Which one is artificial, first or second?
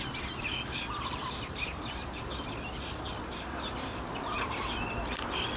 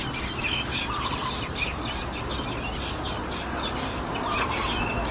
first